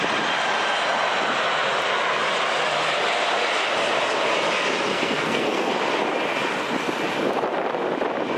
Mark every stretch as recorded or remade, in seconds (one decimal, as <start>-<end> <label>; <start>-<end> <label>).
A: 0.0-4.9 recorded; 4.9-5.7 remade; 5.7-8.4 recorded